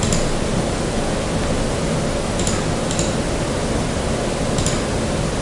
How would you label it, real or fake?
real